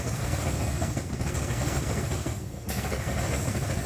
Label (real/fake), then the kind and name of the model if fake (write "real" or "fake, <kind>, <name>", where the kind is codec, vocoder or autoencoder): fake, codec, SNAC